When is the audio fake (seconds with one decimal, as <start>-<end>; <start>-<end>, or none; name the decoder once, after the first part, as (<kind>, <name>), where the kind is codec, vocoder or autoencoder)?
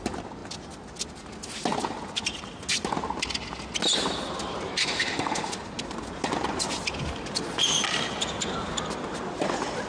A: 4.8-5.5 (autoencoder, DAC-VAE)